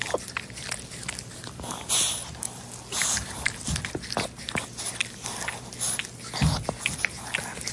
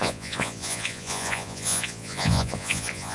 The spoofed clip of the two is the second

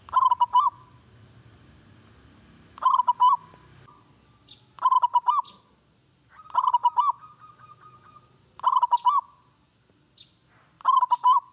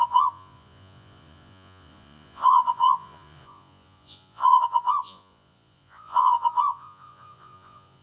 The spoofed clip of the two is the second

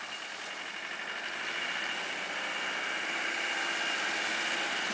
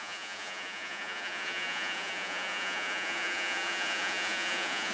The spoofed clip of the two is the second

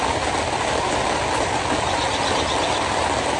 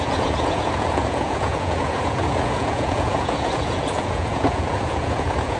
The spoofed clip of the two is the second